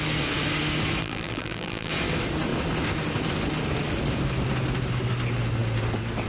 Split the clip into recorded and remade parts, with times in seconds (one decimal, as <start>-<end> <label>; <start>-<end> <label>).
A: 0.0-1.0 recorded; 1.0-1.9 remade; 1.9-6.3 recorded